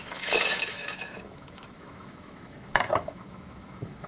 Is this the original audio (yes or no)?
no